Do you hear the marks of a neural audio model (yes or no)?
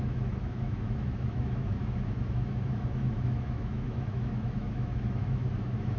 yes